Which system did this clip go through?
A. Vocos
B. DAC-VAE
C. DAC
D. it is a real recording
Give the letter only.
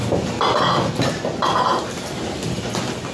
D